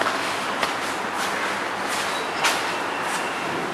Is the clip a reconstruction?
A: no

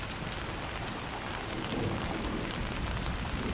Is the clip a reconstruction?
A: no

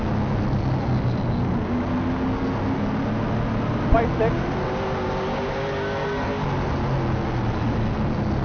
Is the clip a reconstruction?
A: no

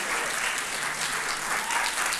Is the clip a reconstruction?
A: no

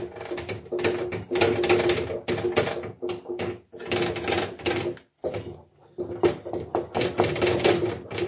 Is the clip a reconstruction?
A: no